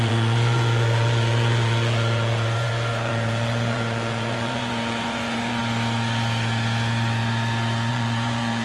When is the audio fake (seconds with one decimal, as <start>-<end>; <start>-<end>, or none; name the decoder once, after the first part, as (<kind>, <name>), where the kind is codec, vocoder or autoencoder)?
0.0-5.6 (vocoder, Vocos); 7.9-8.6